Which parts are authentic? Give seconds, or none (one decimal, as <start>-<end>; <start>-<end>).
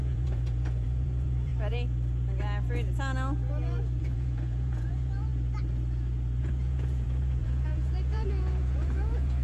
1.5-4.0; 5.3-6.4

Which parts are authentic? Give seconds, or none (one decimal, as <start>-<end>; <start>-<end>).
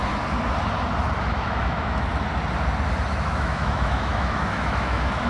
0.0-1.2; 2.1-3.1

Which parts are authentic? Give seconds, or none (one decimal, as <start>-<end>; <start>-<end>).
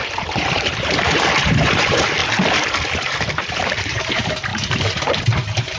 2.2-3.5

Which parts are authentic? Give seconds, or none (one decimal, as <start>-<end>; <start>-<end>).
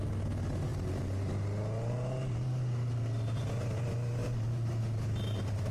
0.0-5.7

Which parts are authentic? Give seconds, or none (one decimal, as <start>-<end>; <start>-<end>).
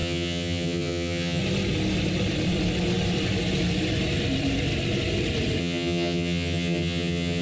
1.4-5.6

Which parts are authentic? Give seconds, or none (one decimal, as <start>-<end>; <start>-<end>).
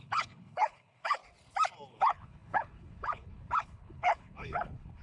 1.2-1.9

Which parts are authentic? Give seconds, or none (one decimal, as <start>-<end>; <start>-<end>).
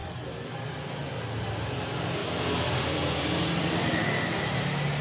0.5-2.2; 3.8-5.0